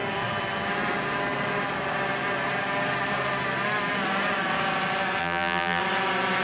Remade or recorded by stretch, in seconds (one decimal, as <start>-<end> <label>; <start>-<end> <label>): 0.0-5.2 recorded; 5.2-5.8 remade; 5.8-6.4 recorded